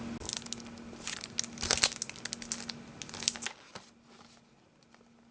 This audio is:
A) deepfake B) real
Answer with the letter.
B